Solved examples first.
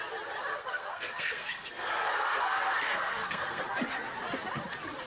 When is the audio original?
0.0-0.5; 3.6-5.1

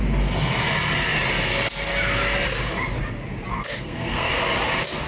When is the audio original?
0.0-3.5; 4.3-5.1

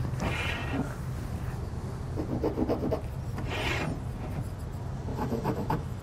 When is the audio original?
0.0-5.1

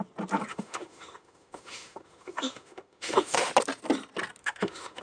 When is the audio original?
0.0-0.5; 3.5-4.4

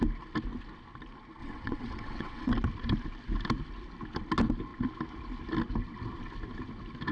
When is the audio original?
0.0-1.4; 2.5-7.1

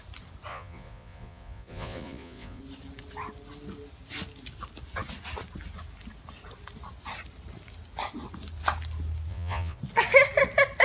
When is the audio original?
0.0-0.5; 2.6-9.3; 9.8-10.8

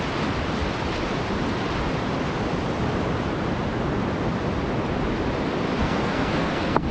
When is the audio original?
0.0-5.8

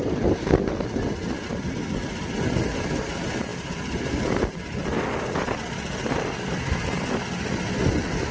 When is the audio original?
0.0-8.3